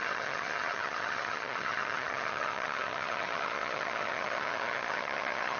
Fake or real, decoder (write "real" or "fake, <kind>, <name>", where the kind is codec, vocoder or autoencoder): fake, vocoder, HiFi-GAN